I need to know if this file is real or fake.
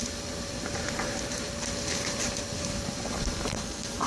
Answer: fake